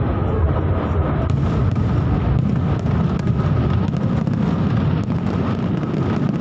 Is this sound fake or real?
real